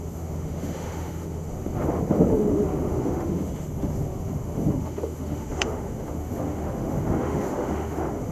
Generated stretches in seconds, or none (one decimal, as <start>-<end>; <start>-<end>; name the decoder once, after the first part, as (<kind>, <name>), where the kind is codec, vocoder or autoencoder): 0.0-8.3 (autoencoder, DAC-VAE)